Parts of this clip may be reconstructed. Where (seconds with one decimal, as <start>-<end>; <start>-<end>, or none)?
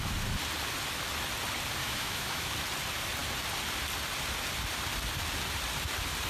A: 1.8-2.5